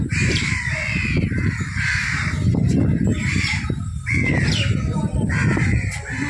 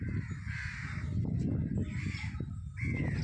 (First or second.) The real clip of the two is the second